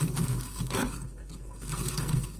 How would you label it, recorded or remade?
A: remade